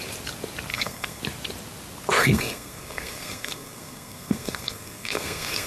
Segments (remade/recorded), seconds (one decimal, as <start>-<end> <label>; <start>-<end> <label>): 0.0-0.7 recorded; 0.7-1.2 remade; 1.2-2.2 recorded; 2.2-5.7 remade